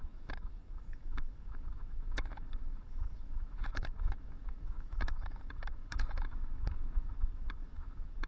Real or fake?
fake